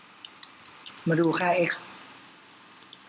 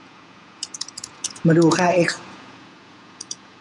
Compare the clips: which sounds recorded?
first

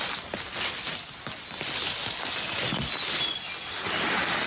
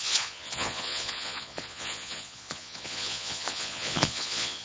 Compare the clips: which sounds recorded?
first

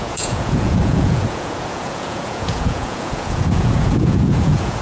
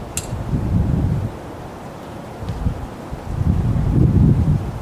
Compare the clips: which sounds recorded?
second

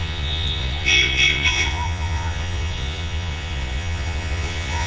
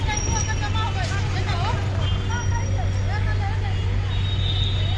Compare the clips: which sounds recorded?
second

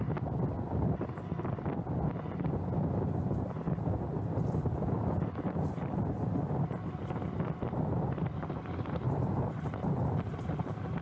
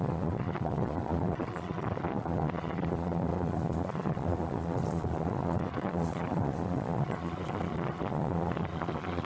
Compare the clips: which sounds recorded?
first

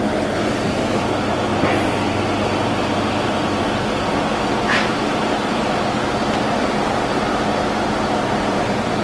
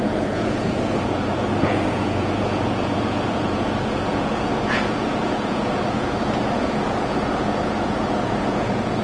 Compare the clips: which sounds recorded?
first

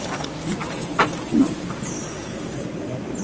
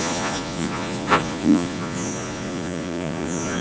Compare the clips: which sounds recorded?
first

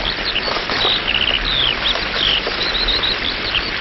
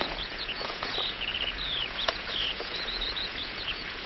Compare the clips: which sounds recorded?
first